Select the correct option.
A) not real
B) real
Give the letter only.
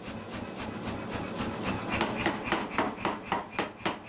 B